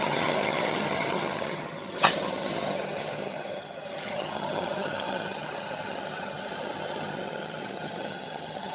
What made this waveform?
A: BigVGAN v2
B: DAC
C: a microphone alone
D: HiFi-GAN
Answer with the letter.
D